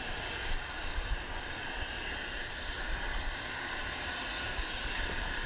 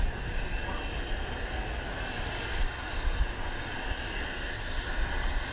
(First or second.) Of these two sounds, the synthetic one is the first